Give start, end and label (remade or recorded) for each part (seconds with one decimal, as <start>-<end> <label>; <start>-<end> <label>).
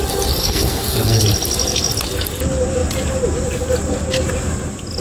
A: 0.0-0.4 recorded; 0.4-1.2 remade; 1.2-5.0 recorded